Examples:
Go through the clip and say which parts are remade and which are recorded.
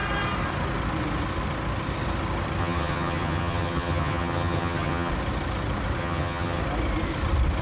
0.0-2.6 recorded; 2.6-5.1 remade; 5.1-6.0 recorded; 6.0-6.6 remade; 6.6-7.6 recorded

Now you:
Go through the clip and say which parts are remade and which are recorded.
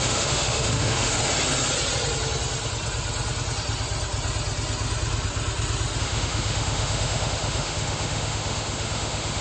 0.0-1.2 remade; 1.2-6.0 recorded; 6.0-9.4 remade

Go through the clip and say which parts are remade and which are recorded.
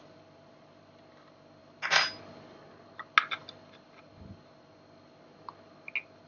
0.0-6.3 recorded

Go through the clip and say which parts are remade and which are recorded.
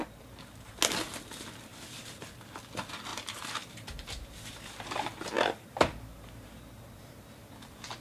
0.0-0.8 remade; 0.8-1.7 recorded; 1.7-2.3 remade; 2.3-3.1 recorded; 3.1-7.5 remade; 7.5-8.0 recorded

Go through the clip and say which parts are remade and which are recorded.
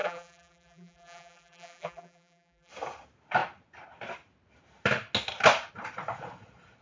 0.0-2.7 remade; 2.7-6.8 recorded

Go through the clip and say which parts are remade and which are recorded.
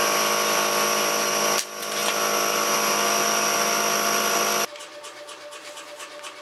0.0-6.4 recorded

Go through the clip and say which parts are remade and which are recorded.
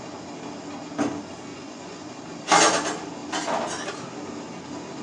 0.0-1.5 recorded; 1.5-2.2 remade; 2.2-5.0 recorded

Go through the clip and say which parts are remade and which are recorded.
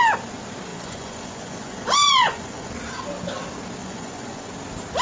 0.0-0.7 recorded; 0.7-2.7 remade; 2.7-3.8 recorded; 3.8-4.5 remade; 4.5-5.0 recorded